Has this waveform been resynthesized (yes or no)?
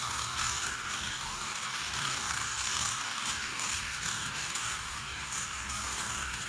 yes